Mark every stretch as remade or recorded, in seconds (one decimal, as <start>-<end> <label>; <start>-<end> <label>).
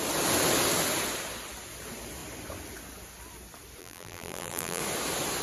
0.0-3.8 recorded; 3.8-4.8 remade; 4.8-5.4 recorded